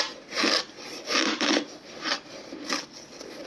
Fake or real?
real